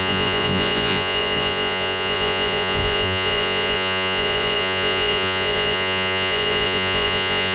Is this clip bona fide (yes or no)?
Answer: no